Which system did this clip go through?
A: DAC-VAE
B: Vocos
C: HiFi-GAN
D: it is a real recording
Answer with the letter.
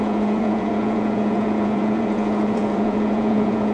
B